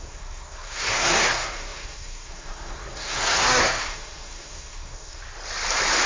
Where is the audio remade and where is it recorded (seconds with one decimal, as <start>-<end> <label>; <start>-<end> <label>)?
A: 0.0-5.2 remade; 5.2-6.1 recorded